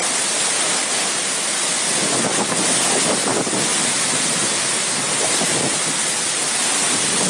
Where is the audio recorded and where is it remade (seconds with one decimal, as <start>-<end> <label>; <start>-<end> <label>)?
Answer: 0.0-7.3 recorded